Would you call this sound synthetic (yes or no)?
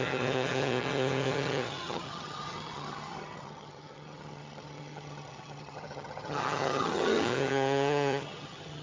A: yes